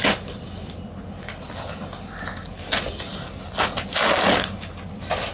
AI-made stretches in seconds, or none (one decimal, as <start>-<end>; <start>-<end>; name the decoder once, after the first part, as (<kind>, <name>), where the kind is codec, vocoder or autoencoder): none

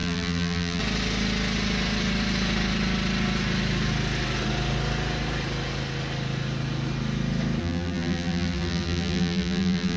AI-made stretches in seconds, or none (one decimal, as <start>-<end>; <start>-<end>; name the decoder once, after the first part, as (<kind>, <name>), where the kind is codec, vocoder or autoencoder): 0.0-0.8 (vocoder, BigVGAN v2); 7.6-10.0

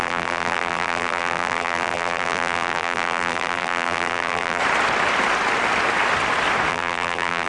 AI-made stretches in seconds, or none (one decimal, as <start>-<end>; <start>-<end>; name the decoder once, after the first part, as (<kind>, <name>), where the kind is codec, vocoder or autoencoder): 0.0-4.6 (vocoder, BigVGAN v2); 6.7-7.5

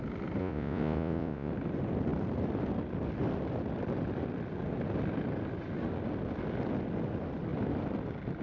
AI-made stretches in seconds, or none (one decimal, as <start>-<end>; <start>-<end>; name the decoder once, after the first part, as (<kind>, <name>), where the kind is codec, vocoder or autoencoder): 0.4-1.5 (vocoder, Vocos)

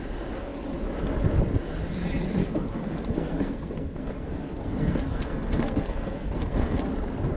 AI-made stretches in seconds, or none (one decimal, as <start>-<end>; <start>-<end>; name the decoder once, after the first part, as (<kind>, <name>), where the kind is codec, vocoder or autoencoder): 2.4-6.8 (codec, SNAC)

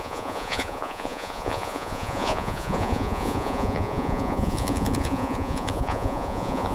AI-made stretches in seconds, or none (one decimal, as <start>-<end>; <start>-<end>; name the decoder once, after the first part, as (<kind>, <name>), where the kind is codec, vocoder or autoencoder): 0.0-6.7 (vocoder, Vocos)

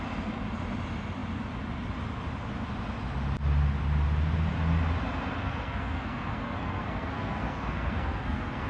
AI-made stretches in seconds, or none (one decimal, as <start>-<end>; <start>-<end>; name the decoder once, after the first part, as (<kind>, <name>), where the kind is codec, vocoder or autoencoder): 5.4-8.7 (codec, SNAC)

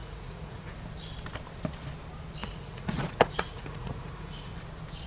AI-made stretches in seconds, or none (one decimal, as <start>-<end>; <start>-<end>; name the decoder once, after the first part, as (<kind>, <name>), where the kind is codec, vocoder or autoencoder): 0.0-0.7 (vocoder, Vocos); 2.4-4.5